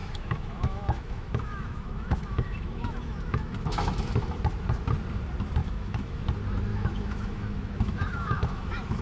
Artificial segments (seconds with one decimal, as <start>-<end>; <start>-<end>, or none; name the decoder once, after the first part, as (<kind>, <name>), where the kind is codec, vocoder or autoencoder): 0.0-4.4 (autoencoder, DAC-VAE); 5.6-6.2; 6.7-9.0